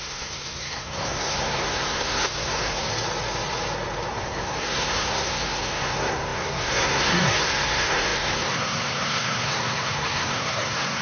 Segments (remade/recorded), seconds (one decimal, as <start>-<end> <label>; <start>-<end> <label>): 0.0-2.9 remade; 2.9-4.1 recorded; 4.1-11.0 remade